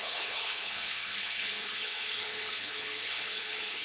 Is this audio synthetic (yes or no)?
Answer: yes